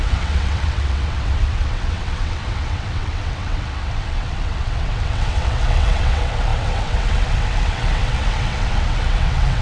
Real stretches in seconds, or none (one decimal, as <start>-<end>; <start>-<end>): none